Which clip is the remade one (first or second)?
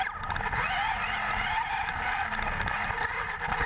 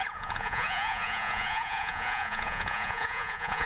second